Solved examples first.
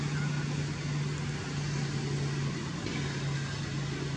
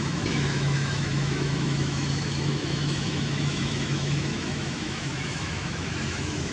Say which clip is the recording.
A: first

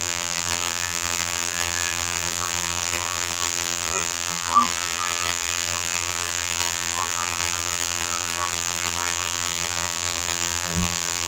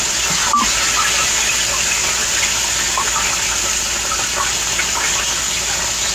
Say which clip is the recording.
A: second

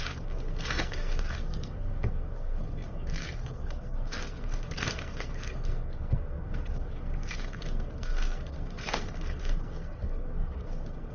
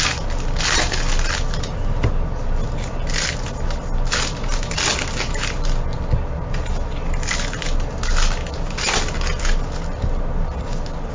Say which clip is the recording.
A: second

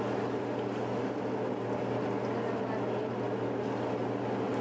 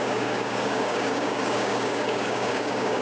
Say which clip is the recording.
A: first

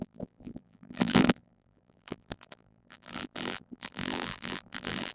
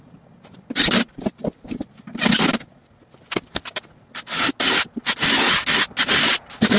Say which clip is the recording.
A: second